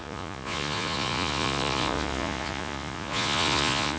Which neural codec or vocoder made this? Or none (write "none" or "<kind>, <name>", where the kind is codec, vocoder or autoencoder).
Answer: vocoder, Vocos